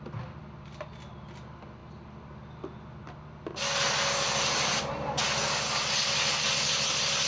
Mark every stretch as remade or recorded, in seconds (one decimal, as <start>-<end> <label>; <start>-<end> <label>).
0.0-7.3 recorded